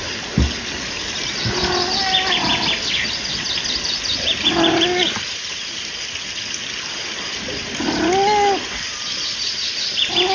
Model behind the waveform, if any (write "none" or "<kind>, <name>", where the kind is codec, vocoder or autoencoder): none